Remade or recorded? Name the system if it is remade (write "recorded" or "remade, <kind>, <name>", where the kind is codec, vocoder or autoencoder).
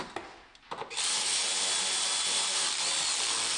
recorded